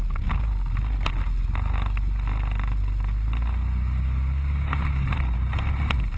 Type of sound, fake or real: real